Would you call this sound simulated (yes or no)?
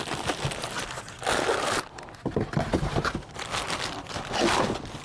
no